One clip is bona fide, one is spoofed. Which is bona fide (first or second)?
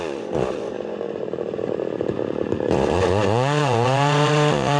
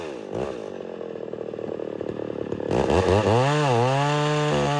second